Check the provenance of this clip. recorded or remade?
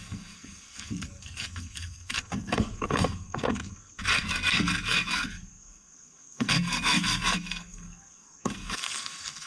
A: remade